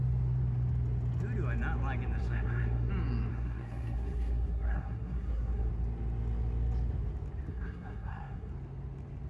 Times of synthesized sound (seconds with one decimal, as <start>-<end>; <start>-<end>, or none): 2.2-2.9; 3.3-5.7; 7.5-8.5